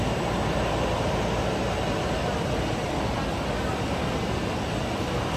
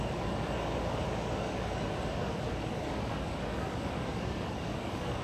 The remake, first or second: second